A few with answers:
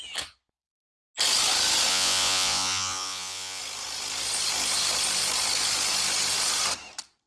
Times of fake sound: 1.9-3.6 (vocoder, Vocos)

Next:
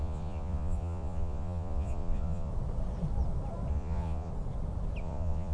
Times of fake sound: 0.0-2.5 (vocoder, Vocos); 3.7-4.3; 5.0-5.5

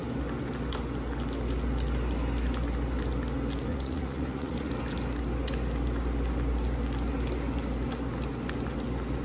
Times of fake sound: 3.7-4.7 (vocoder, Vocos)

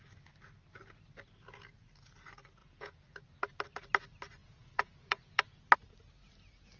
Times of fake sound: 2.6-3.2 (vocoder, Vocos); 4.4-5.6

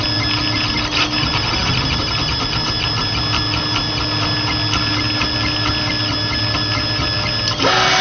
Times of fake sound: none